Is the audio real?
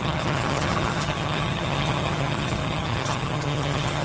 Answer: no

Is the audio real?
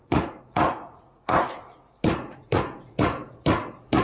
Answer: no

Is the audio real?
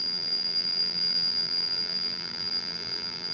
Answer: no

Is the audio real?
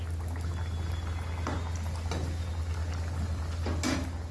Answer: yes